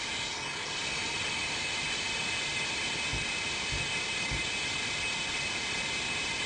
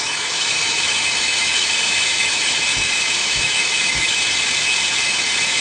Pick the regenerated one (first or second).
second